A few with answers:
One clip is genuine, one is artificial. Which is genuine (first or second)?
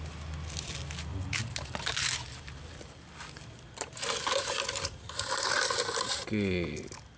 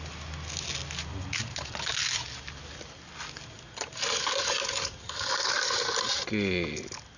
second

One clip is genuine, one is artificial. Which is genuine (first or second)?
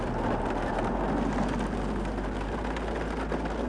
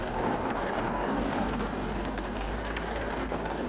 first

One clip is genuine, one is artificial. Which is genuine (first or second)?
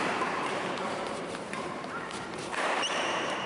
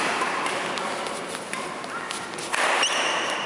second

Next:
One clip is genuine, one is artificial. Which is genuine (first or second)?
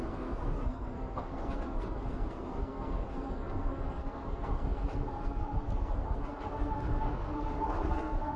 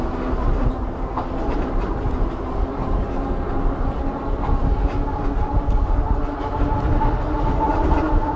second